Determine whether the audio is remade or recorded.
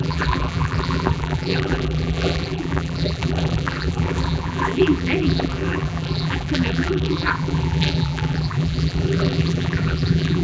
remade